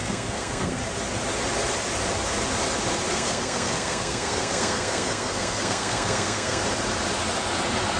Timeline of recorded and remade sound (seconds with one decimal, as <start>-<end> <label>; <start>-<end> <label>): 0.0-0.8 remade; 0.8-3.1 recorded; 3.1-6.6 remade; 6.6-8.0 recorded